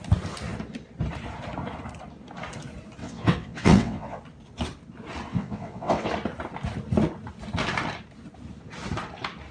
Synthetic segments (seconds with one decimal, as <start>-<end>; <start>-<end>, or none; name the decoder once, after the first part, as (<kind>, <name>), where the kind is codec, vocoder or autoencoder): 3.0-4.2 (vocoder, WaveNeXt); 5.3-6.1

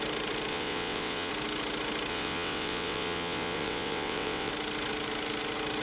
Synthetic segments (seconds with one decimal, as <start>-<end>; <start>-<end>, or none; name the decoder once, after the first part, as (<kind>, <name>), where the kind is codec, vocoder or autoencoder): 0.5-1.3 (vocoder, WaveNeXt); 2.1-4.5

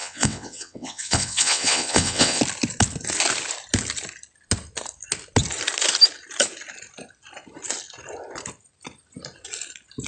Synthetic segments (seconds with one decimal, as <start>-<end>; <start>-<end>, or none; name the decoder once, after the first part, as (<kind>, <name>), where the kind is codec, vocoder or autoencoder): 0.0-2.4 (vocoder, WaveNeXt)

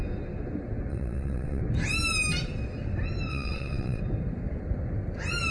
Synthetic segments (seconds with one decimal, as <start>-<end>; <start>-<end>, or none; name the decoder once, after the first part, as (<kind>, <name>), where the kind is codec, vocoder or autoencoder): 0.9-1.6 (vocoder, WaveNeXt); 3.3-4.0

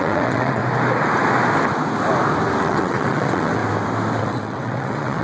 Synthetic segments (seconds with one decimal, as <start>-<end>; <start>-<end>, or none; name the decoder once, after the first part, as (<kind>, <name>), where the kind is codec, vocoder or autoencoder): 0.0-0.6 (vocoder, WaveNeXt); 2.6-3.6; 4.2-5.2